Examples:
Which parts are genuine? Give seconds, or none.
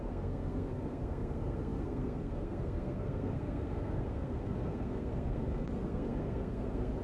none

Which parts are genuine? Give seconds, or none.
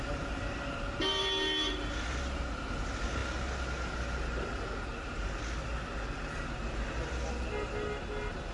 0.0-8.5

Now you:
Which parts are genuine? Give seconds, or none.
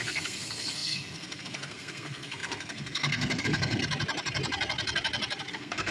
3.8-5.5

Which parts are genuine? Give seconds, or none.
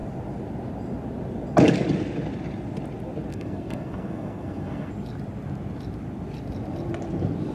0.0-3.3; 4.9-7.5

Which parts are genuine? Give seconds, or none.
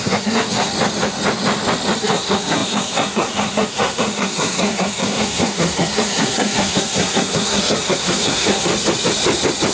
0.7-2.0; 8.7-9.7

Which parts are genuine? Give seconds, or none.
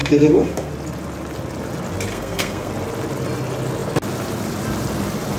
0.7-2.1; 2.7-5.4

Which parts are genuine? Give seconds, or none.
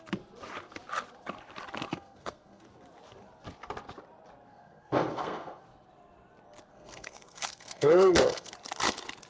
0.0-1.9; 2.6-4.5; 5.6-6.7; 8.5-9.3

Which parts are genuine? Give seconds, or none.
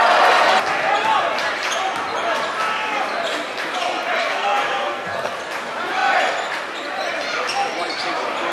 0.0-4.2; 5.3-8.5